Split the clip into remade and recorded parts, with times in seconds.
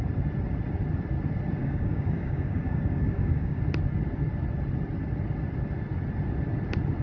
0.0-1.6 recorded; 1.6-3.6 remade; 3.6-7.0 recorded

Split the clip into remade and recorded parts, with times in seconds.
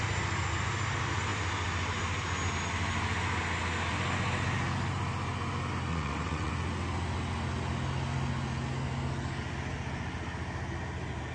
0.0-5.9 recorded; 5.9-6.5 remade; 6.5-11.3 recorded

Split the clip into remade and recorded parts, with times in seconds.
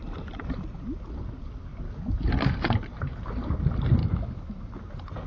0.0-4.0 recorded; 4.0-4.8 remade; 4.8-5.3 recorded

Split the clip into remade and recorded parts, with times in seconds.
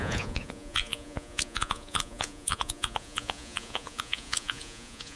0.0-5.2 remade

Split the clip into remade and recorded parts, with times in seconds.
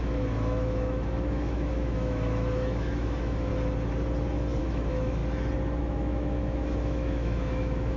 0.0-3.5 remade; 3.5-4.6 recorded; 4.6-5.2 remade; 5.2-5.8 recorded; 5.8-8.0 remade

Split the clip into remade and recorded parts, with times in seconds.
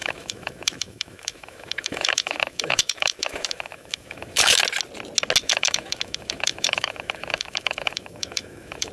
0.0-4.6 remade; 4.6-5.4 recorded; 5.4-8.9 remade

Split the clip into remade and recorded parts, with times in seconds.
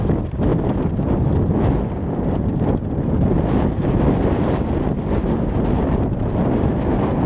0.0-7.3 recorded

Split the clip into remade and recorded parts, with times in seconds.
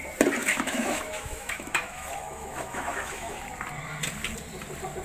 0.0-0.4 recorded; 0.4-3.4 remade; 3.4-5.0 recorded